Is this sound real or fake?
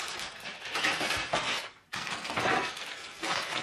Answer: fake